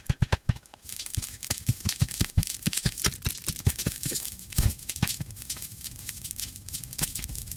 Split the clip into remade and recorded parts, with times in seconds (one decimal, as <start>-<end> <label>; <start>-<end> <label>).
0.0-3.0 remade; 3.0-3.6 recorded; 3.6-7.6 remade